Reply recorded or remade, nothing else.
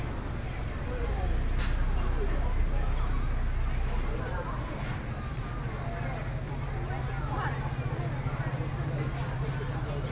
recorded